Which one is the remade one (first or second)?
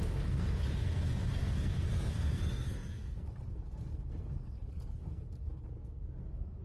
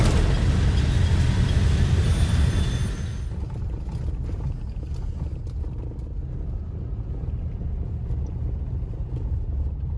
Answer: first